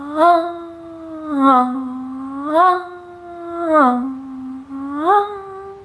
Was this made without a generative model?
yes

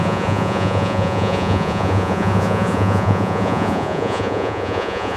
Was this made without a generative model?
no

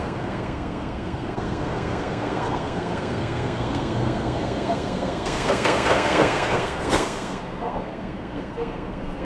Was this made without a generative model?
no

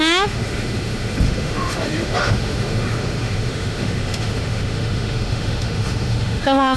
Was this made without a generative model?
no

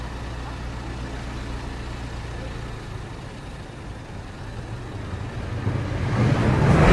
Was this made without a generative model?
yes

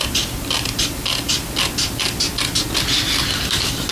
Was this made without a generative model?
yes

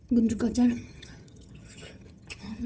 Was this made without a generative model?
no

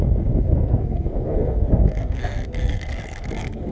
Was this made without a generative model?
no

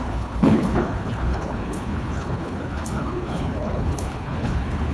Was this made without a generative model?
no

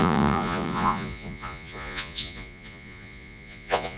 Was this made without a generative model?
no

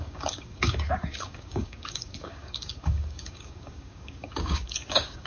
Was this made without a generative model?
no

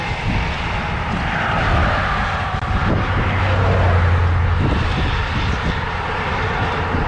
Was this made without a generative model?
yes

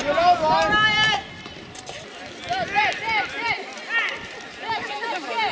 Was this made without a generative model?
yes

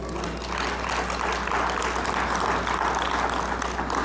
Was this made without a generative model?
yes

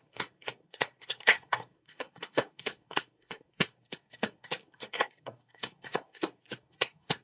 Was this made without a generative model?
no